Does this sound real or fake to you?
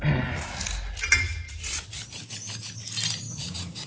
real